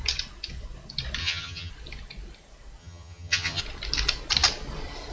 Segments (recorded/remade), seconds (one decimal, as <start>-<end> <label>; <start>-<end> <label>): 0.0-1.2 recorded; 1.2-1.7 remade; 1.7-2.8 recorded; 2.8-3.6 remade; 3.6-5.1 recorded